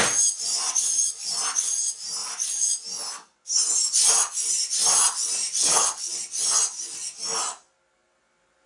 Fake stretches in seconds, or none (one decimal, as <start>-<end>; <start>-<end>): 5.6-6.1